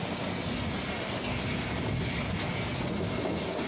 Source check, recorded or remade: recorded